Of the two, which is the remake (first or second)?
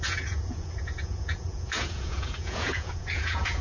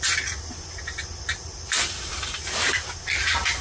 first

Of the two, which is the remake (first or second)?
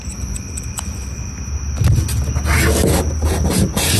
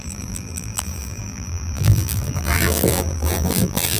second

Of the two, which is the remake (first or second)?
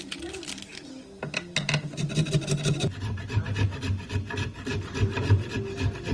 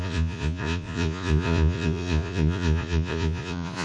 second